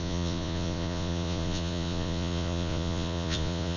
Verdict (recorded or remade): remade